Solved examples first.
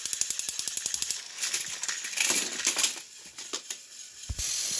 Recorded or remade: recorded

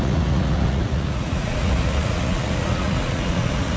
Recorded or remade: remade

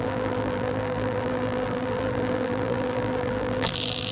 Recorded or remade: remade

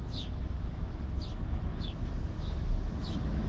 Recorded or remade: remade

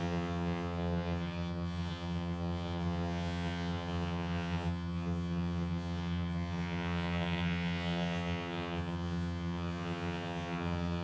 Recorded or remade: remade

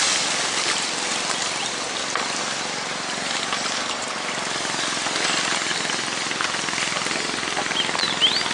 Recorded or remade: recorded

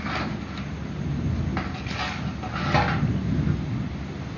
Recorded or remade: recorded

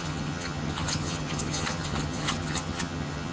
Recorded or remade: remade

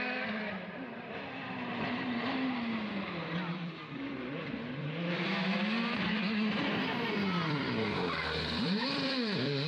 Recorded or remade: remade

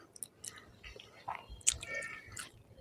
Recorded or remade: recorded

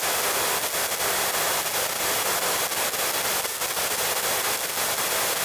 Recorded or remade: recorded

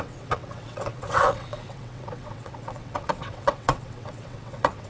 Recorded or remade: remade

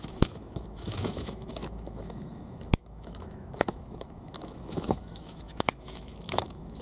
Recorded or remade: remade